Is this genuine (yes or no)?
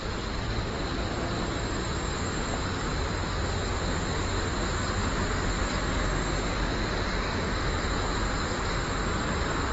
yes